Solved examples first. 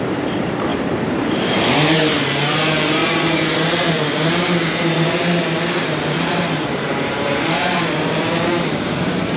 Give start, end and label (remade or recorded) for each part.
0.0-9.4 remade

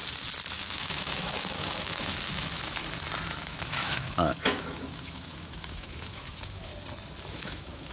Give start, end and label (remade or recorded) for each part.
0.0-0.6 recorded; 0.6-2.8 remade; 2.8-3.3 recorded; 3.3-6.7 remade; 6.7-7.3 recorded; 7.3-7.9 remade